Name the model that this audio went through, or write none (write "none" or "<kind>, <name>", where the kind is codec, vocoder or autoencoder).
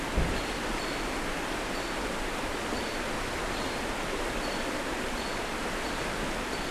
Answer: none